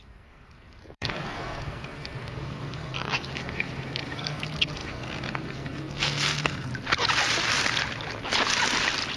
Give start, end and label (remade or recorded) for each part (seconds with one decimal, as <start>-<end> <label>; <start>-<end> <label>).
0.0-6.7 remade; 6.7-9.2 recorded